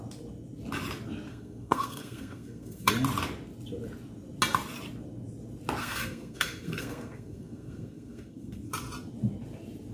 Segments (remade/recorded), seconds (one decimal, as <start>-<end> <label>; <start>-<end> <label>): 0.0-1.3 recorded; 1.3-2.9 remade; 2.9-5.8 recorded; 5.8-8.7 remade; 8.7-9.9 recorded